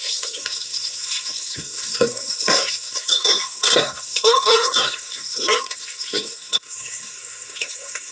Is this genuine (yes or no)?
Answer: no